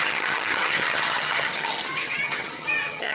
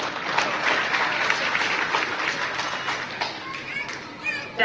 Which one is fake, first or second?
first